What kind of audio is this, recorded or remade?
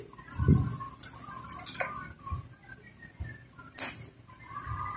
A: recorded